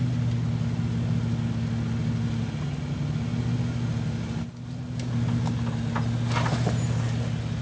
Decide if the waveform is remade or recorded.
recorded